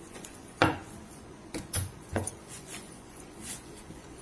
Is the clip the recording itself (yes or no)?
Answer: no